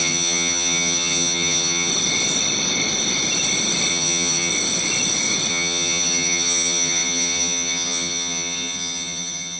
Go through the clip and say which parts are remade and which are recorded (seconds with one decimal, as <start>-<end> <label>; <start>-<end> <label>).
0.0-1.9 remade; 1.9-3.9 recorded; 3.9-4.5 remade; 4.5-5.5 recorded; 5.5-9.6 remade